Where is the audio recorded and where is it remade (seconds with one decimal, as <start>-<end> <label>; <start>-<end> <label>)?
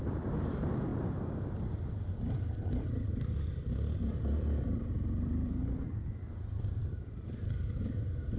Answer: 0.0-0.9 remade; 0.9-2.7 recorded; 2.7-5.6 remade; 5.6-6.9 recorded; 6.9-8.4 remade